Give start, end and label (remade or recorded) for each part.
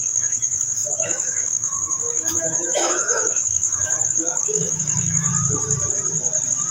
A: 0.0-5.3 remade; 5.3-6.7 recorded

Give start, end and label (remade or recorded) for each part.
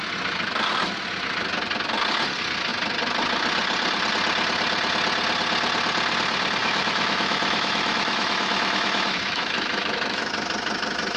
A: 0.0-6.6 recorded; 6.6-10.3 remade; 10.3-11.2 recorded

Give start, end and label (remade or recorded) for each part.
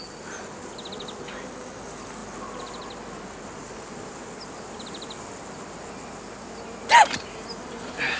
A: 0.0-8.2 recorded